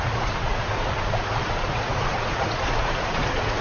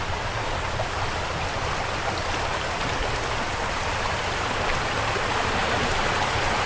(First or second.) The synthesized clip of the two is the first